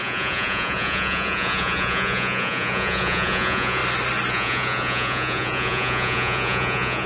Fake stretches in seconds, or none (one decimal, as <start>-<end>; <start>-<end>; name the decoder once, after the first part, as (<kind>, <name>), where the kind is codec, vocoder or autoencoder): 0.0-3.8 (vocoder, Vocos); 4.3-7.1